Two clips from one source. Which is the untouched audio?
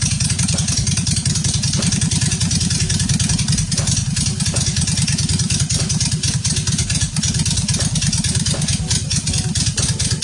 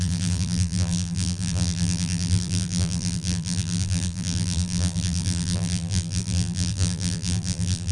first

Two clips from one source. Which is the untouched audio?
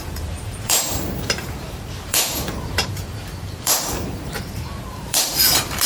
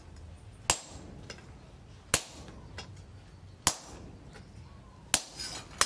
second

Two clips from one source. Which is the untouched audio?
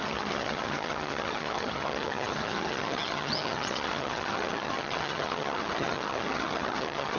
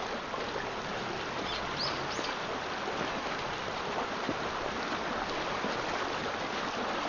second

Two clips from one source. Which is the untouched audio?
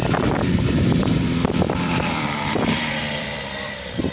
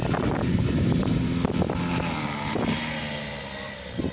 second